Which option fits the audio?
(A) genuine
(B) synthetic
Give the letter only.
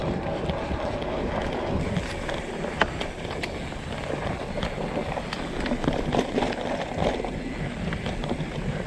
A